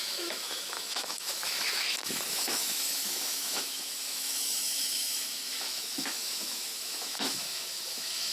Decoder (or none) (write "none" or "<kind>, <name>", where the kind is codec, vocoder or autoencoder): autoencoder, DAC-VAE